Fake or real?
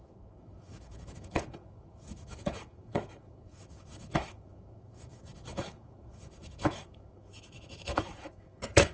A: fake